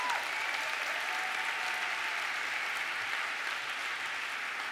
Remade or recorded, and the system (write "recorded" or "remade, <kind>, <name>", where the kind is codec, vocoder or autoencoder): recorded